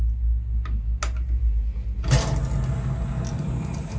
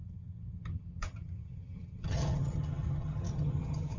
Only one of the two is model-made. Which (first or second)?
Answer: second